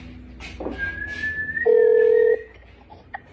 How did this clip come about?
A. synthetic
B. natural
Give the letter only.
B